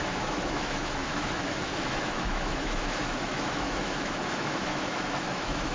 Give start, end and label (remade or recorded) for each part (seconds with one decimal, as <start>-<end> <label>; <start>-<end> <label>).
0.0-5.7 remade